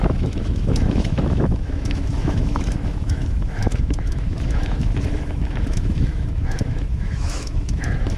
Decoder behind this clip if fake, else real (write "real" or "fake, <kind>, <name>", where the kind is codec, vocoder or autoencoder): fake, autoencoder, DAC-VAE